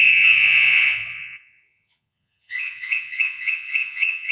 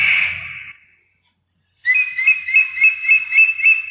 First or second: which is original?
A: second